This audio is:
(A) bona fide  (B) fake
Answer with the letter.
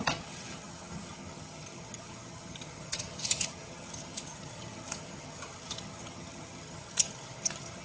B